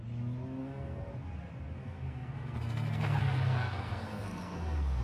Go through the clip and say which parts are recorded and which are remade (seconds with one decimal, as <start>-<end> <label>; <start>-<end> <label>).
0.0-0.6 recorded; 0.6-1.1 remade; 1.1-1.8 recorded; 1.8-5.0 remade